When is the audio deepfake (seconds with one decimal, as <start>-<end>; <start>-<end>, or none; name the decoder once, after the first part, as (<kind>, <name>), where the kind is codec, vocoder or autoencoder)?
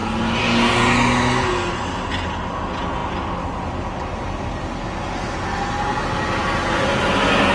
none